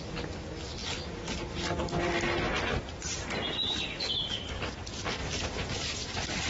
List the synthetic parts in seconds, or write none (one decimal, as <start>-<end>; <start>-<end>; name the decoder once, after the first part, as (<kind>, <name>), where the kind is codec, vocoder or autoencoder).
5.2-5.7 (vocoder, BigVGAN v2)